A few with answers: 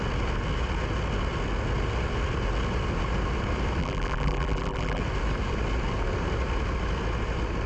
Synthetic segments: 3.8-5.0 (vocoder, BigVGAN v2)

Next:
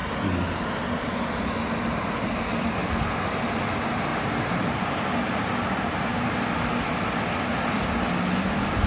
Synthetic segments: 4.1-6.3 (vocoder, BigVGAN v2)

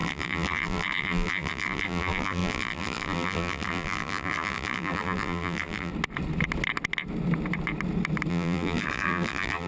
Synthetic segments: 0.0-5.9 (vocoder, BigVGAN v2); 8.3-9.7

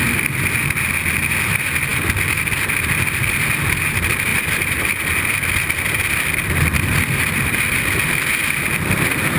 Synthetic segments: 4.3-5.0 (vocoder, BigVGAN v2)